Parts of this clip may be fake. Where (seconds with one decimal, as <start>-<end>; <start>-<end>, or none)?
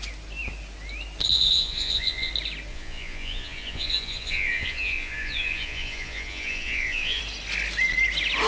1.3-2.3; 2.7-7.2